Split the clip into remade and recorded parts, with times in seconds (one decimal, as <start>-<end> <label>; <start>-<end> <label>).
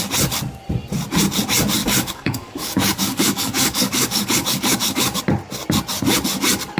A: 0.0-1.8 recorded; 1.8-5.2 remade; 5.2-6.8 recorded